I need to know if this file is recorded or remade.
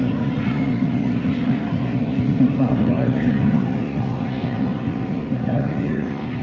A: remade